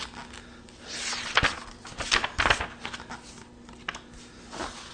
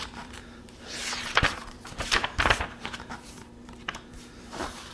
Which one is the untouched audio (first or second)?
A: first